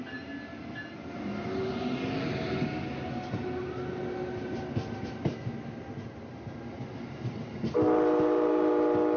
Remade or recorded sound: recorded